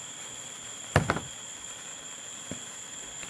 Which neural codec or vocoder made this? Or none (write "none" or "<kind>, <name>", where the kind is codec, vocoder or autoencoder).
none